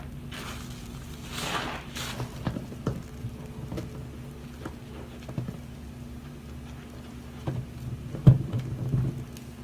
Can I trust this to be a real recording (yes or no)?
yes